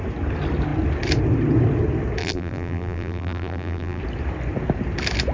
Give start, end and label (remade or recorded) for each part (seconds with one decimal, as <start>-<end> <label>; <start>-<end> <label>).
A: 0.0-2.2 recorded; 2.2-4.0 remade; 4.0-5.3 recorded